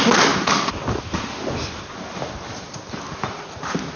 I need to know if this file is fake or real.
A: real